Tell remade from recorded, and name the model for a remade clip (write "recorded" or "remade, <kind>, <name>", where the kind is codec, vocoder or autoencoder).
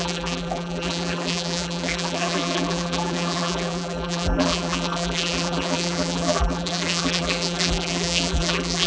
remade, vocoder, BigVGAN v2